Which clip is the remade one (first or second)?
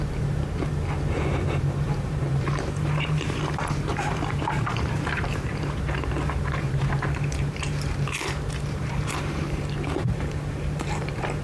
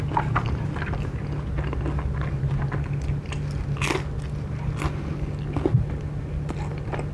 first